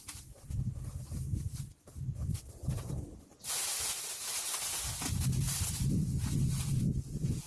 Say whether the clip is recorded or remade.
recorded